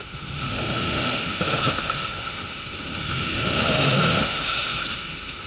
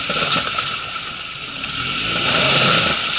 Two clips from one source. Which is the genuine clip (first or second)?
second